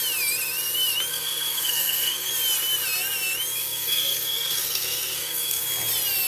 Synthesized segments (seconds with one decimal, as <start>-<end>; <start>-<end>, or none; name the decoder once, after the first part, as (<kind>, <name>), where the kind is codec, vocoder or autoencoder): 1.1-2.3 (codec, SNAC); 3.6-5.6